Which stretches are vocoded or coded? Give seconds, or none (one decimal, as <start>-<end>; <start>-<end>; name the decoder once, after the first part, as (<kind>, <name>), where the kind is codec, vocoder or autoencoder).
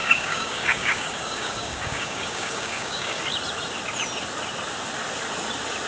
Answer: 0.0-3.2 (codec, DAC)